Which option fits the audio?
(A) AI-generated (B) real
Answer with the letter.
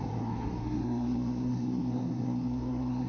A